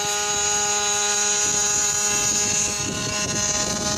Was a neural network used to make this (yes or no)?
no